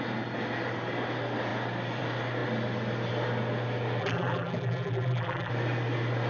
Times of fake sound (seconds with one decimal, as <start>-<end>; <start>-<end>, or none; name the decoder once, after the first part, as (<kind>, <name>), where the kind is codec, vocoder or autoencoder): 4.0-5.5 (vocoder, BigVGAN v2)